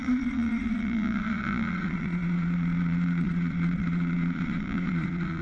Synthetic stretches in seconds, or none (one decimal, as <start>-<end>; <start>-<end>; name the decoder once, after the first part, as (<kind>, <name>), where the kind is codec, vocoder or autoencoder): 0.0-5.4 (vocoder, Vocos)